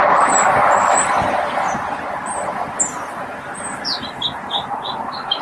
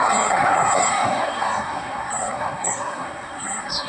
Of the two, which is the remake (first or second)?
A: second